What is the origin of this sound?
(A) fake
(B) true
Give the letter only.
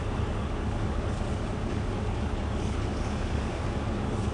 A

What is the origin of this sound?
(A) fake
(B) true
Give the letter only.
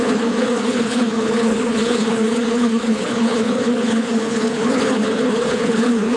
A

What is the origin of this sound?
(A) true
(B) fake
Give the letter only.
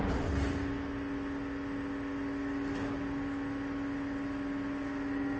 A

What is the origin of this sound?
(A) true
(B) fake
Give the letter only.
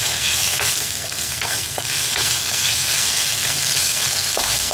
B